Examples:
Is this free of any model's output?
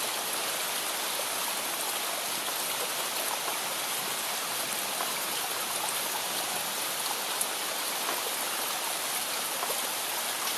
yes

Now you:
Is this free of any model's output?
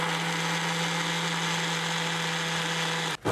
yes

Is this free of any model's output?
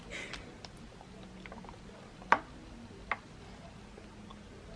yes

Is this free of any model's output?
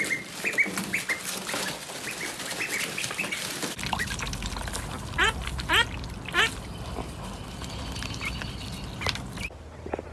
yes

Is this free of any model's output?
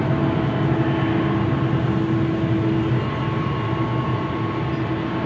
yes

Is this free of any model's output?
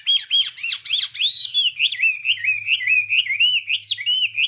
yes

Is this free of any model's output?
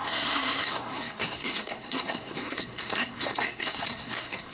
no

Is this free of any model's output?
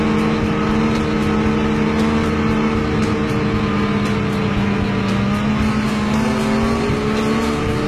yes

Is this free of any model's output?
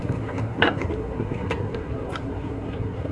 no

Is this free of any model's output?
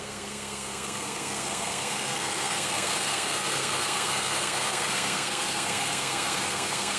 no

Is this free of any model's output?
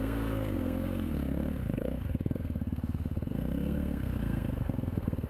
no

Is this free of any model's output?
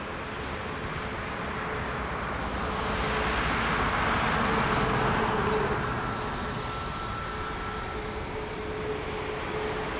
yes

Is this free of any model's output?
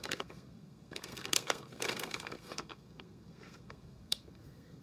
no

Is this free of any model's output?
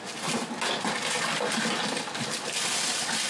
yes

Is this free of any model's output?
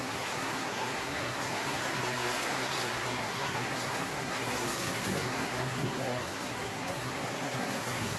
no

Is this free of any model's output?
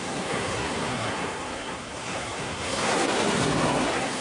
no